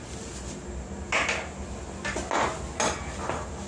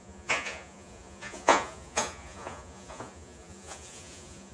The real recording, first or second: first